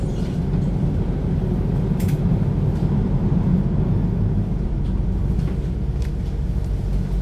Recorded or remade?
recorded